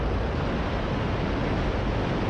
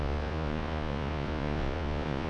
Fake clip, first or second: second